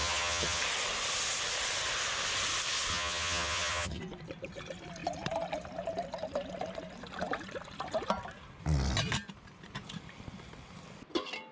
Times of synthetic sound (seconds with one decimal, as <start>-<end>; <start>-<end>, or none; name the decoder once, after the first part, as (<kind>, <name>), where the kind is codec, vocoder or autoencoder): 0.0-0.6 (vocoder, HiFi-GAN); 2.9-4.0